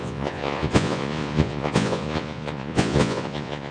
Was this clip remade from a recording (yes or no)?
yes